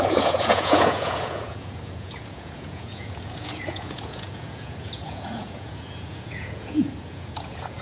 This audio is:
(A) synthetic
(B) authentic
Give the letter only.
A